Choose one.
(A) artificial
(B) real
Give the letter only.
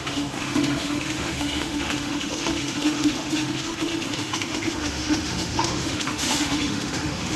A